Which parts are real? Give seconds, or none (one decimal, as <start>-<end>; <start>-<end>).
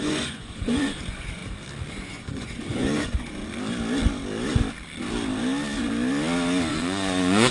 1.4-1.9; 3.4-6.7